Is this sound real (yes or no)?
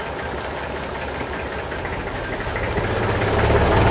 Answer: yes